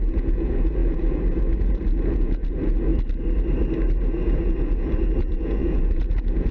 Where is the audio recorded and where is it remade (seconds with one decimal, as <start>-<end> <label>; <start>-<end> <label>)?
0.0-2.9 remade; 2.9-3.9 recorded; 3.9-6.5 remade